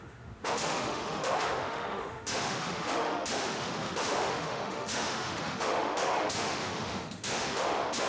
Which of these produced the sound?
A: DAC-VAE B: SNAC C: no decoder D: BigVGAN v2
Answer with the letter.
A